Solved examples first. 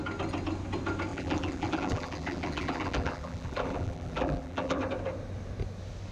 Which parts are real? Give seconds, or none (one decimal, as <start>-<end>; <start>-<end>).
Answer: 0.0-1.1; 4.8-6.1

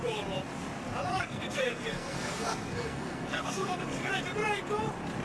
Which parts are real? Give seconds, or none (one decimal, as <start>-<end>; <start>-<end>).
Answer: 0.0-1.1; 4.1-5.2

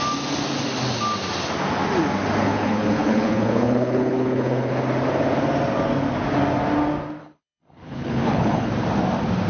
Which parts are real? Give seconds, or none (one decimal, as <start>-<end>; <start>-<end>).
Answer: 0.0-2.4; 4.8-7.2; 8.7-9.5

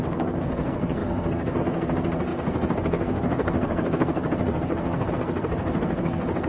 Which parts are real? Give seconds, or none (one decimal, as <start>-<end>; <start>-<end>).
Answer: none